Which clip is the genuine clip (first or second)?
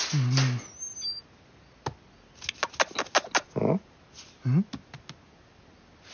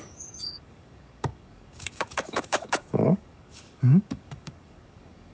first